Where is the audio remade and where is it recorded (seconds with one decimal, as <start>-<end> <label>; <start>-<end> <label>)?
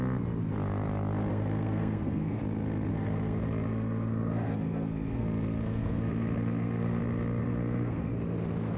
0.0-1.3 recorded; 1.3-2.4 remade; 2.4-2.9 recorded; 2.9-7.0 remade; 7.0-7.4 recorded; 7.4-8.1 remade; 8.1-8.8 recorded